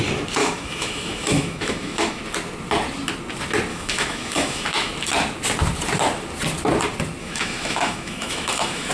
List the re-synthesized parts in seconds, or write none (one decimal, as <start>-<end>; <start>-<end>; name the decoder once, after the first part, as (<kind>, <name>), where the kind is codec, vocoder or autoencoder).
0.4-2.2 (autoencoder, DAC-VAE); 3.7-4.9; 7.2-8.9